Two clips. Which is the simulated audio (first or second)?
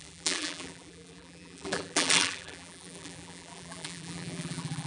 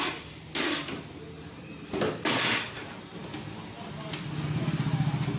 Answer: first